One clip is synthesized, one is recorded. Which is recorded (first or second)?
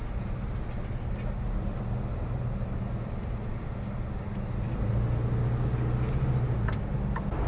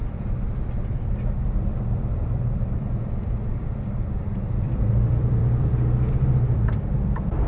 first